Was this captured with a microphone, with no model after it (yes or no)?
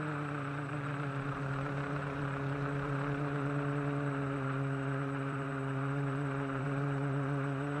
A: no